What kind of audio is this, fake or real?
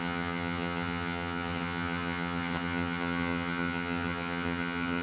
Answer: fake